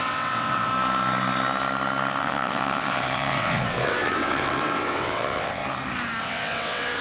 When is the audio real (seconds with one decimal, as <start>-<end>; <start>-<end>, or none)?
0.7-2.2; 5.6-6.2